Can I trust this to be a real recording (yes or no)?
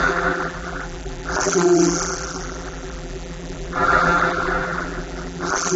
no